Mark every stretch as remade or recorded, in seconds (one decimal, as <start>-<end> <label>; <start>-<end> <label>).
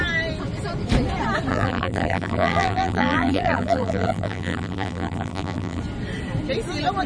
0.0-1.5 recorded; 1.5-5.8 remade; 5.8-7.1 recorded